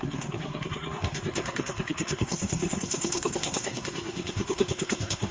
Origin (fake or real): fake